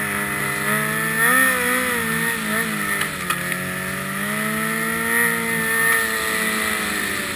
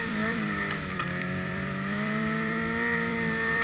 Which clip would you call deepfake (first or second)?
second